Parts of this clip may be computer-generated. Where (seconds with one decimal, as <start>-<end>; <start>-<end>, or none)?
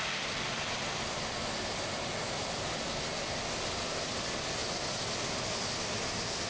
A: none